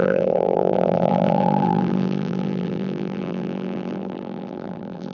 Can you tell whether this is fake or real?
fake